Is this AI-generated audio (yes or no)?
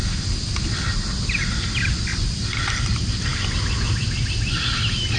no